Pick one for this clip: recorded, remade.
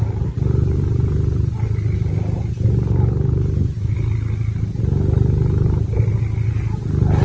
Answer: recorded